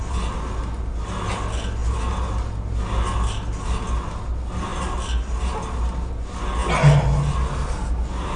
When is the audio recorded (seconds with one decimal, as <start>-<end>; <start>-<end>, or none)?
0.0-8.4